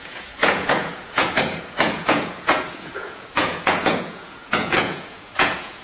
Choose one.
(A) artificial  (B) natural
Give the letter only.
A